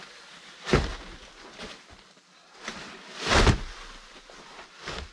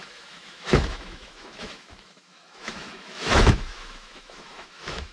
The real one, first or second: first